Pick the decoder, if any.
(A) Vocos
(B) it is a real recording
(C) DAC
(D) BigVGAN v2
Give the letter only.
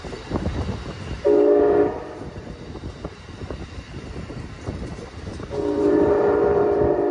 D